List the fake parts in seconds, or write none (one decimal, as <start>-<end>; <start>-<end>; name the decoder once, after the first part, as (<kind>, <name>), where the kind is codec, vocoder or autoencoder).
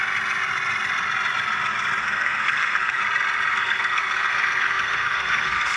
2.0-3.0 (codec, SNAC); 3.5-5.8